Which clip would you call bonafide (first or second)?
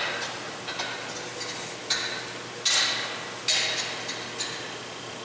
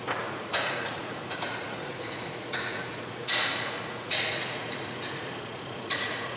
first